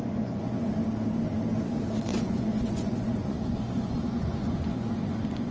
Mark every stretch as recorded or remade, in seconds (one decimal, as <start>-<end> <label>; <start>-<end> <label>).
0.0-0.7 remade; 0.7-2.1 recorded; 2.1-5.5 remade